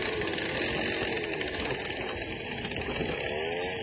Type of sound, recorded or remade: recorded